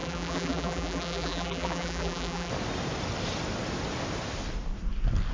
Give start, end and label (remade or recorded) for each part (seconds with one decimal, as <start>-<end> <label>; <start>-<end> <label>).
0.0-2.5 remade; 2.5-5.3 recorded